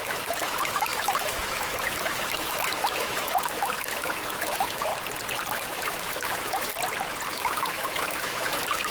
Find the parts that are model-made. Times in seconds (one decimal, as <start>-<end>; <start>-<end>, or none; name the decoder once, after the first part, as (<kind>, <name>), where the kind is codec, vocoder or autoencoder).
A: 0.0-4.9 (autoencoder, DAC-VAE); 5.5-6.7; 7.3-8.9